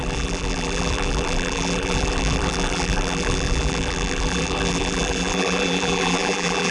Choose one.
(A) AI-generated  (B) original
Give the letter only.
A